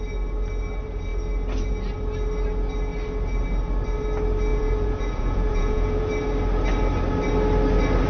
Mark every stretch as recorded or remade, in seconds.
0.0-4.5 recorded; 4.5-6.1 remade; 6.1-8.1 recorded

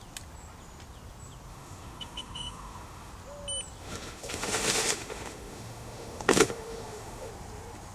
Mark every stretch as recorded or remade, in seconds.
0.0-1.5 recorded; 1.5-3.1 remade; 3.1-3.8 recorded; 3.8-7.3 remade; 7.3-7.9 recorded

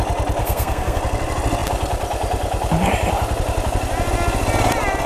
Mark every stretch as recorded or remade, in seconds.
0.0-0.4 recorded; 0.4-1.0 remade; 1.0-5.1 recorded

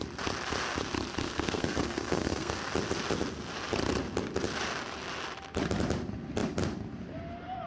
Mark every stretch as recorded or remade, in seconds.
0.0-1.2 recorded; 1.2-2.6 remade; 2.6-7.7 recorded

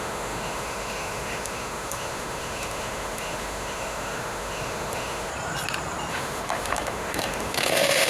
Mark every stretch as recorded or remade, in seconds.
0.0-5.3 remade; 5.3-6.1 recorded; 6.1-8.1 remade